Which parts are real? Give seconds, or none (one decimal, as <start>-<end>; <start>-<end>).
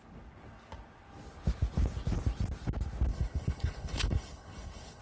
0.0-3.1